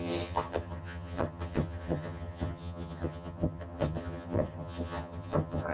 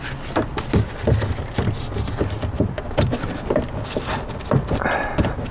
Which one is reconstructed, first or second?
first